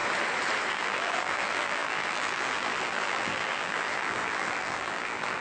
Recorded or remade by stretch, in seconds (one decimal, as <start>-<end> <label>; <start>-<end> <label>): 0.0-0.7 recorded; 0.7-5.4 remade